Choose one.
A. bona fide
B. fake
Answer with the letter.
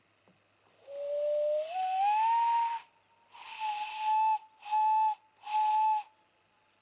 A